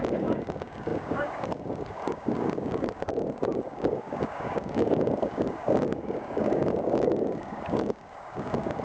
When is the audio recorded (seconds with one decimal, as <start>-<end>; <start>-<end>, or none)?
none